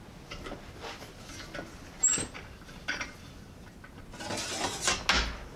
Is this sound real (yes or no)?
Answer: yes